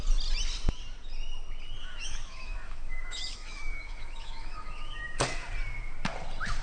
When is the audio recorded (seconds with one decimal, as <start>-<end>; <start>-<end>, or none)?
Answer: 0.0-1.8; 5.2-6.6